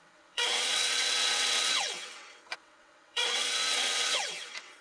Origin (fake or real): fake